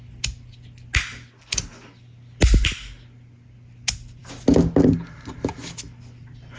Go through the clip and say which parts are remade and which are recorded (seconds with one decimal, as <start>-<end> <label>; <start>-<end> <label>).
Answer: 0.0-6.6 recorded